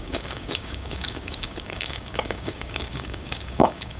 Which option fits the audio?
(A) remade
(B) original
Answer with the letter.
A